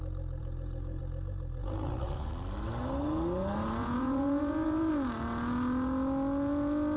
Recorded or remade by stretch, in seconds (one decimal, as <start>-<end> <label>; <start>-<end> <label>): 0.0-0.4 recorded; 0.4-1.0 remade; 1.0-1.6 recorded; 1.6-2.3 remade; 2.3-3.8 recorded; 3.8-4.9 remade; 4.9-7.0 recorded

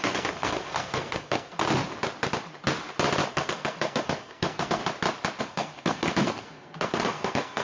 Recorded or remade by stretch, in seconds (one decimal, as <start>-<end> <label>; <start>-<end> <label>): 0.0-1.6 remade; 1.6-3.3 recorded; 3.3-4.8 remade; 4.8-5.4 recorded; 5.4-7.6 remade

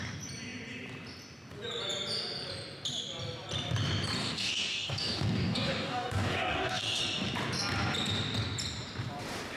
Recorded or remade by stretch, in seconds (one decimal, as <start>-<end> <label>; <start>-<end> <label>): 0.0-4.2 recorded; 4.2-7.0 remade; 7.0-9.6 recorded